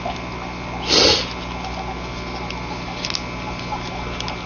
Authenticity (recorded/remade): recorded